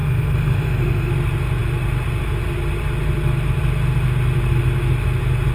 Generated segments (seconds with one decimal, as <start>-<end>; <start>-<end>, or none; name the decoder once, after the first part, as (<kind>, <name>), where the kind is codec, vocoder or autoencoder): 0.0-1.1 (autoencoder, DAC-VAE)